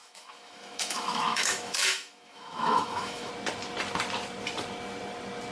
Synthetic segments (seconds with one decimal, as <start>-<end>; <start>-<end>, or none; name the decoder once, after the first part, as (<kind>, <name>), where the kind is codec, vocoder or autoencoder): 0.0-3.3 (autoencoder, DAC-VAE)